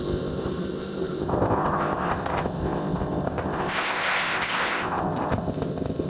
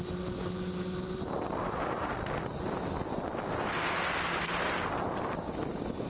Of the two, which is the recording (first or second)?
second